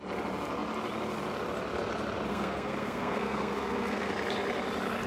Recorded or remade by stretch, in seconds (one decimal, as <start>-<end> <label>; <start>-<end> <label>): 0.0-2.3 recorded; 2.3-4.1 remade; 4.1-5.1 recorded